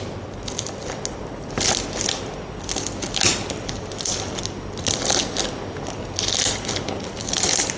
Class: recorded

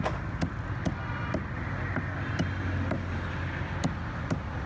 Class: recorded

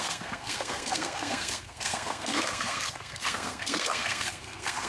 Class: remade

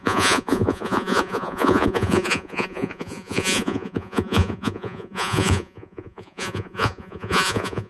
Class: remade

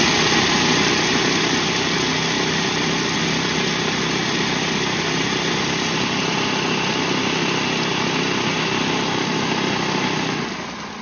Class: recorded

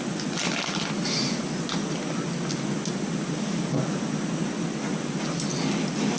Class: recorded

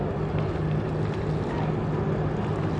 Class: recorded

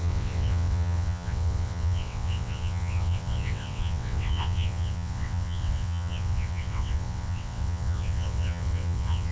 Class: remade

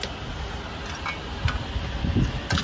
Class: recorded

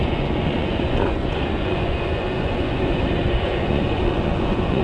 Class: remade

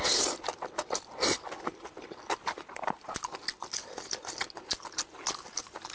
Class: recorded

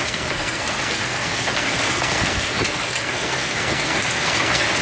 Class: remade